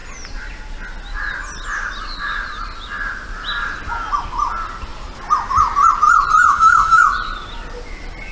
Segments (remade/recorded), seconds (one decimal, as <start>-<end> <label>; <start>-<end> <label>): 0.0-6.5 recorded; 6.5-7.0 remade; 7.0-8.3 recorded